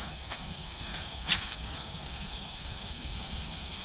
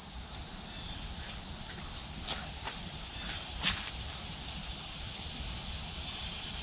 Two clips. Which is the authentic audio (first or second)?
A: second